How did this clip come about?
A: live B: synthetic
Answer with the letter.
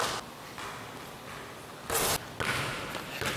A